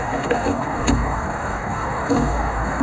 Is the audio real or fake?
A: fake